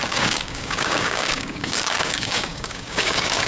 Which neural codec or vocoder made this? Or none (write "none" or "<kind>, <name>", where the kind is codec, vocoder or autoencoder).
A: codec, DAC